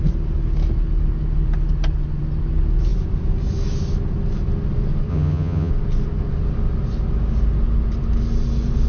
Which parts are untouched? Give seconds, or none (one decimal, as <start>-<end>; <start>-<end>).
0.0-5.1; 5.7-8.9